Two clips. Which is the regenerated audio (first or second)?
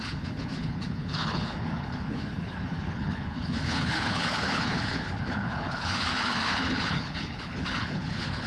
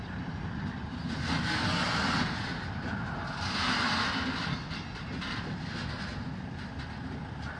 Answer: first